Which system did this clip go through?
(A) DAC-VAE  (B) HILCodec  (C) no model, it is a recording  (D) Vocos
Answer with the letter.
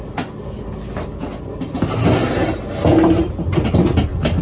C